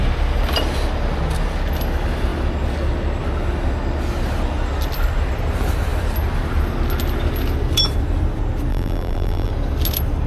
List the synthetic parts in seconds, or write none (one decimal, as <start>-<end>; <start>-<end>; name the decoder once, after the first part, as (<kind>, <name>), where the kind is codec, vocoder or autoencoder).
8.7-9.5 (vocoder, BigVGAN v2)